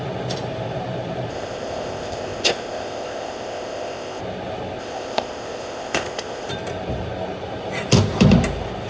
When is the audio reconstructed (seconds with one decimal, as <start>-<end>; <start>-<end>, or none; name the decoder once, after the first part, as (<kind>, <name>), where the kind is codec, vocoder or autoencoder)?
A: 1.3-4.2 (codec, ZipCodec); 4.8-6.5